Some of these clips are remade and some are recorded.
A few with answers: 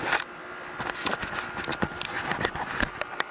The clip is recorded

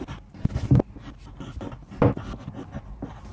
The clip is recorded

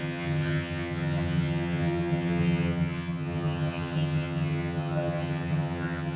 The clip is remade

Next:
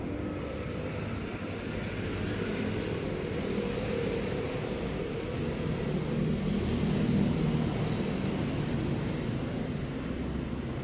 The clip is recorded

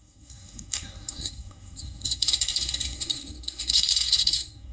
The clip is remade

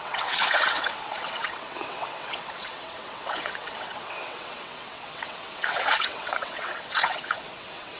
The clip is remade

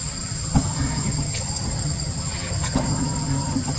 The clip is remade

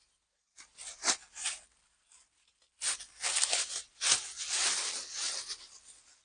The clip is recorded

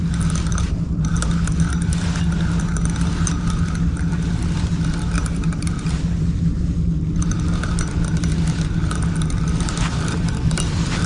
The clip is recorded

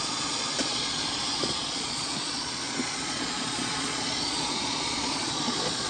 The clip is remade